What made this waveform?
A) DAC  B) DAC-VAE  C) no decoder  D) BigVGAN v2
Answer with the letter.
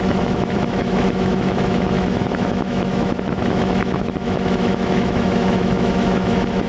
B